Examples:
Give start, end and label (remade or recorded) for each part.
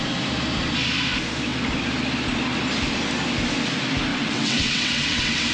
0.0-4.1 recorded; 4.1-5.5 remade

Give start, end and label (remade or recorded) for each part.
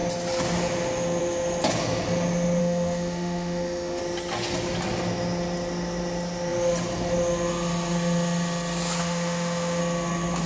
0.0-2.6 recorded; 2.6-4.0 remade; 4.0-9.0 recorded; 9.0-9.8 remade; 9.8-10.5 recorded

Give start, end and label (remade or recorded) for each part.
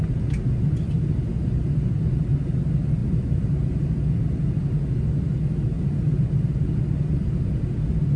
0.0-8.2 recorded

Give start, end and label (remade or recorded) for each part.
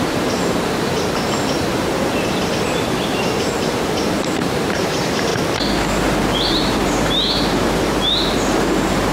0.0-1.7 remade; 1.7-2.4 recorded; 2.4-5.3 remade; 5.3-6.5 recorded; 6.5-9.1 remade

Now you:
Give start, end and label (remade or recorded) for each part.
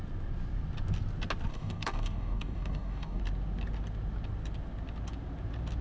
0.0-1.5 recorded; 1.5-3.2 remade; 3.2-5.8 recorded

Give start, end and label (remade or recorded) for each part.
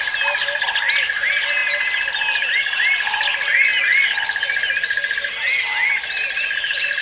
0.0-7.0 recorded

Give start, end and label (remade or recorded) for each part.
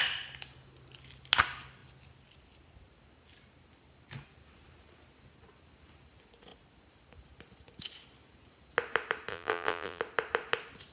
0.0-9.3 recorded; 9.3-10.0 remade; 10.0-10.9 recorded